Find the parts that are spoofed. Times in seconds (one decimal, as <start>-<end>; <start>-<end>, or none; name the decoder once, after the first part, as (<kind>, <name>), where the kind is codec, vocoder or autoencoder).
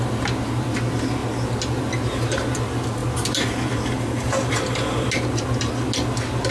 none